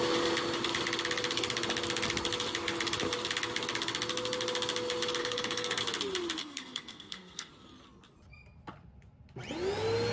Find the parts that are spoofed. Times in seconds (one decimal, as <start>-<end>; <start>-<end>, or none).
5.2-5.8; 6.4-7.5